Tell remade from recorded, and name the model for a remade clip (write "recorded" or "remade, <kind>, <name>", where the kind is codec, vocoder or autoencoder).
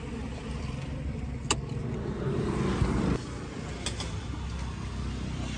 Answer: recorded